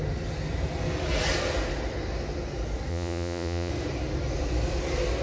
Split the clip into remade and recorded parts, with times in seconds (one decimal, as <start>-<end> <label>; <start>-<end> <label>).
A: 0.0-2.9 recorded; 2.9-3.7 remade; 3.7-5.2 recorded